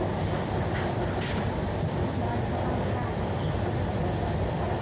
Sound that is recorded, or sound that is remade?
recorded